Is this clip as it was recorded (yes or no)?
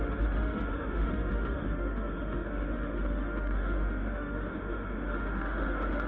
no